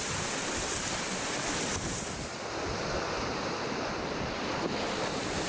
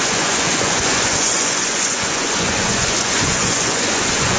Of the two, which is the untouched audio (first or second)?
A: first